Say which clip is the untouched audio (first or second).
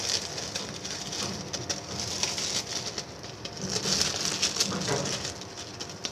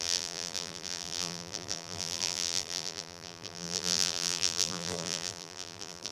first